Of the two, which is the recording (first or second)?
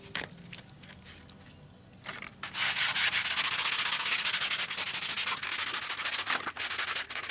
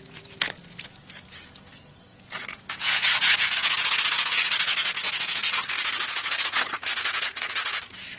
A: first